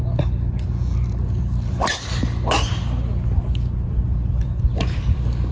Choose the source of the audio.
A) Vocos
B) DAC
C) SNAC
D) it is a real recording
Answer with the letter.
D